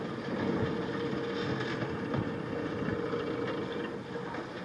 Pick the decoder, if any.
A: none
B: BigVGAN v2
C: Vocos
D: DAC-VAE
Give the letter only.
A